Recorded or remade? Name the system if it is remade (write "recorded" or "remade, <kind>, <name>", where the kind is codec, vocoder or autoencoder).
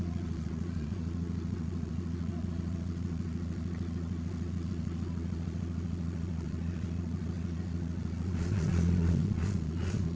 remade, vocoder, Vocos